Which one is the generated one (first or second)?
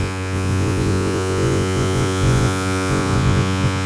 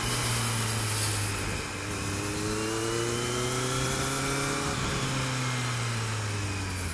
first